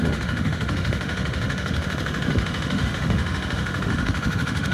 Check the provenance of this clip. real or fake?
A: fake